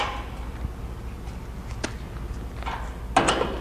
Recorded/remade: recorded